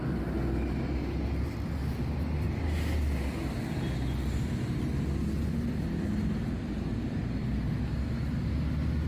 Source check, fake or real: real